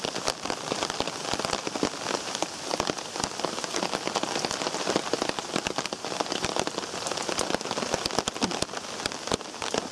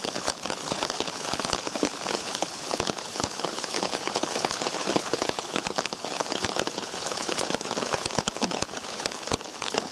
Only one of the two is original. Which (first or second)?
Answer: first